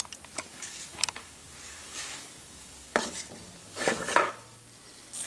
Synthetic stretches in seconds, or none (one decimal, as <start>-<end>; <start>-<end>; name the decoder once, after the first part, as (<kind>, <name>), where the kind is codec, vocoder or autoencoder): 0.5-3.1 (codec, DAC); 3.6-4.3